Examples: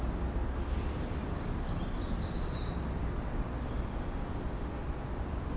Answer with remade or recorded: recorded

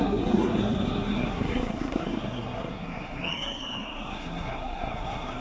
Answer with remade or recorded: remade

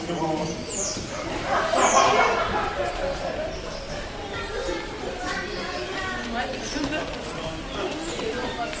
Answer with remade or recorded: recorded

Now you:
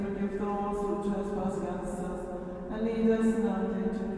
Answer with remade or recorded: recorded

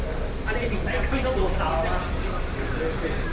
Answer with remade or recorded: recorded